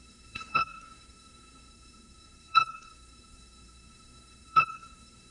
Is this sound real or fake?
fake